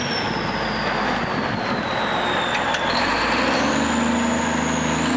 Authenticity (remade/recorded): recorded